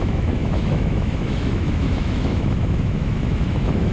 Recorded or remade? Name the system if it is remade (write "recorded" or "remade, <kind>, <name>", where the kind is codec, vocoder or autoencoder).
remade, autoencoder, DAC-VAE